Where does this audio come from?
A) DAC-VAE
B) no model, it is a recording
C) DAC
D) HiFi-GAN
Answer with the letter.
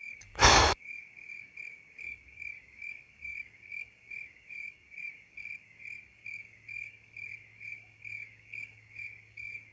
C